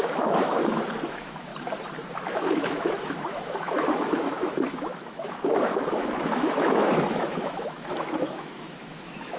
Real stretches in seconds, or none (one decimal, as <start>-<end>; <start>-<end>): 0.6-1.1; 1.5-2.3